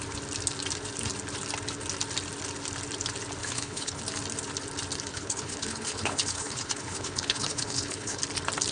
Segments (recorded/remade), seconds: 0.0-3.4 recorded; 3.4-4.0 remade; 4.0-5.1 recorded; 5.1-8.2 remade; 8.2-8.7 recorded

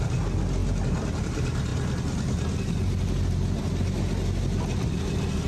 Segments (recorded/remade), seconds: 0.0-5.5 recorded

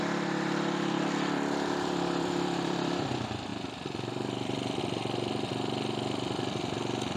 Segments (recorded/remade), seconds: 0.0-7.2 remade

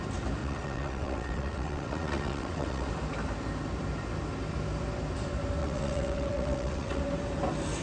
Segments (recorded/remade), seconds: 0.0-0.4 recorded; 0.4-2.9 remade; 2.9-5.6 recorded; 5.6-7.0 remade; 7.0-7.8 recorded

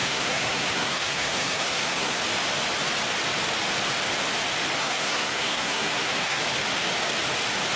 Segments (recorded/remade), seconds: 0.0-2.2 remade; 2.2-4.8 recorded; 4.8-6.4 remade; 6.4-7.8 recorded

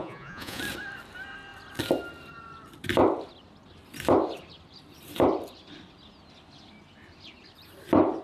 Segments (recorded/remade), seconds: 0.0-0.6 remade; 0.6-8.2 recorded

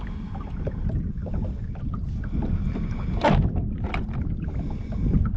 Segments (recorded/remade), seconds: 0.0-5.4 recorded

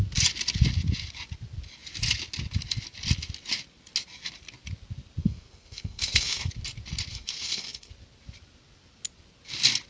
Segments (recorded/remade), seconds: 0.0-5.2 recorded; 5.2-6.5 remade; 6.5-7.1 recorded; 7.1-7.9 remade; 7.9-9.9 recorded